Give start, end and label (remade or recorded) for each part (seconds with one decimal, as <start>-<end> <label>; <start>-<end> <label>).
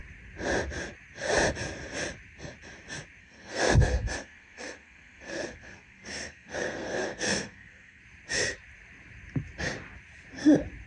0.0-3.2 recorded; 3.2-8.0 remade; 8.0-10.9 recorded